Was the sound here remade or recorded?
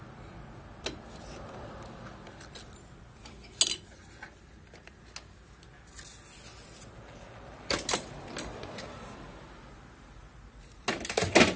recorded